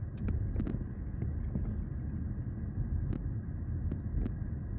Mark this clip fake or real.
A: real